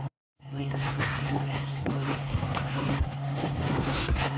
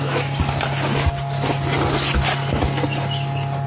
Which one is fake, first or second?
first